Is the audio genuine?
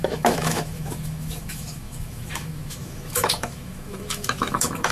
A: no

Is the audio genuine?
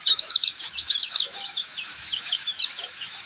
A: no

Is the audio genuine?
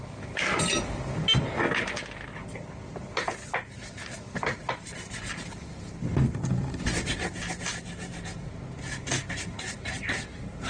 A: yes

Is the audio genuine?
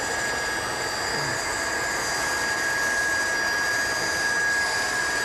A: yes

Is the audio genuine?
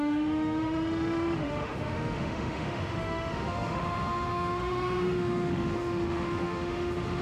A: no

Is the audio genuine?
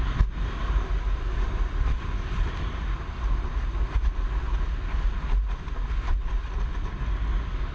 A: yes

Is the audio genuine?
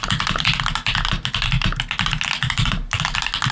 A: yes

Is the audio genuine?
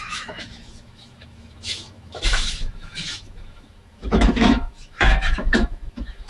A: no